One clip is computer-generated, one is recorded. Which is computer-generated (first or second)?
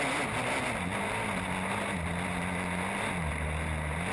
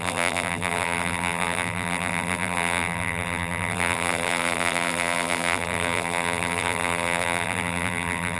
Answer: second